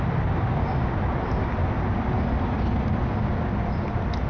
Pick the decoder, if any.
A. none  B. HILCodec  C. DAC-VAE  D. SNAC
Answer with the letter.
A